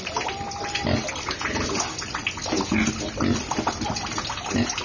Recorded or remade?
recorded